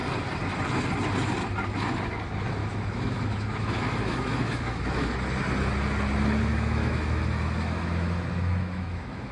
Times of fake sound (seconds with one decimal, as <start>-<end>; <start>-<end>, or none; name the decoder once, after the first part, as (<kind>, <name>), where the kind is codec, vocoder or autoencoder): 2.6-5.1 (autoencoder, DAC-VAE); 6.5-9.3